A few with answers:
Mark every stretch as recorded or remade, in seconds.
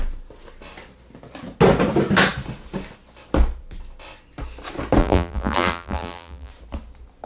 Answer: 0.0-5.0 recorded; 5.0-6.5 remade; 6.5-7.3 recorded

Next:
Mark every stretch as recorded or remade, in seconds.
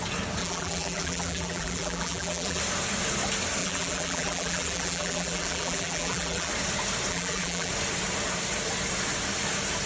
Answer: 0.0-0.4 recorded; 0.4-2.6 remade; 2.6-3.6 recorded; 3.6-6.5 remade; 6.5-7.1 recorded; 7.1-7.7 remade; 7.7-9.9 recorded